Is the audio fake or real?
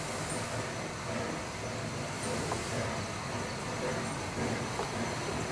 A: real